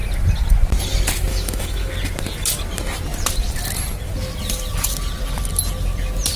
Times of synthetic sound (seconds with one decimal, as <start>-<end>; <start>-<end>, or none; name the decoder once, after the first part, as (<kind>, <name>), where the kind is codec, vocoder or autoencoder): 1.3-1.9 (autoencoder, DAC-VAE)